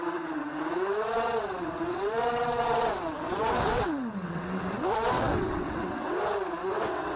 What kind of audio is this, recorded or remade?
remade